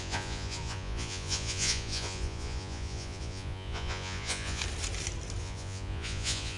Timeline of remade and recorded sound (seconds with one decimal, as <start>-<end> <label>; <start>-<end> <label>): 0.0-4.6 remade; 4.6-5.4 recorded; 5.4-6.6 remade